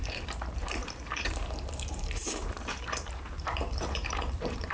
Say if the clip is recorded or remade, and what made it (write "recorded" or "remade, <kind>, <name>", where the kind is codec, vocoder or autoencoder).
remade, vocoder, BigVGAN v2